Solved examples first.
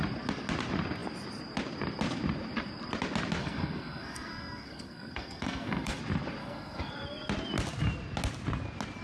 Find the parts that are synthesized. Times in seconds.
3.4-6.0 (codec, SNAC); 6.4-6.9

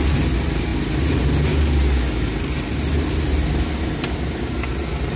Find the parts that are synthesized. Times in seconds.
none

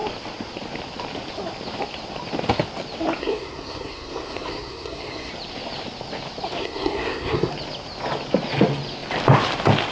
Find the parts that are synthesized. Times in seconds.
3.2-5.3 (codec, SNAC); 6.6-7.5

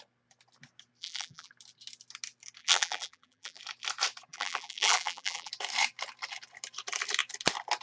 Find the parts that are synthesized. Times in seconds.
1.0-1.5 (vocoder, BigVGAN v2); 2.6-3.6; 4.3-5.5

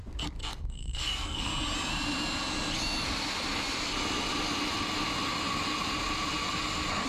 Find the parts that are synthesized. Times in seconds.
0.4-1.5 (codec, SNAC)